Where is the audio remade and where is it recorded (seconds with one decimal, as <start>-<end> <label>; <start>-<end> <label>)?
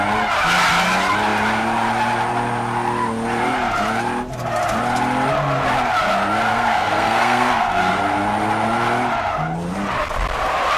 0.0-6.5 recorded; 6.5-8.0 remade; 8.0-10.8 recorded